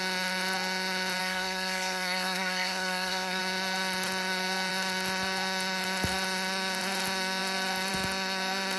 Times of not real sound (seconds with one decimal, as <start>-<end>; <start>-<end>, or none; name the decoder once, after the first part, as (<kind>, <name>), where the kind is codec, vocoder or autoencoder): 1.2-3.4 (codec, SNAC)